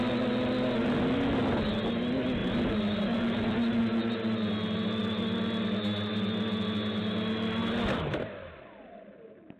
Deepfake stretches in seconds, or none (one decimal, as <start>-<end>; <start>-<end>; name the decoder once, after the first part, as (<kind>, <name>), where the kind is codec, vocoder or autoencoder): 2.4-3.8 (vocoder, BigVGAN v2); 7.6-8.6